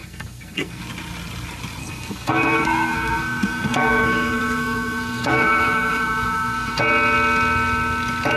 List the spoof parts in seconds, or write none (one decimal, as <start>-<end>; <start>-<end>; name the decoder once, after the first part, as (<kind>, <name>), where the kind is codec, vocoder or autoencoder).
0.0-0.8 (codec, SNAC); 1.8-6.8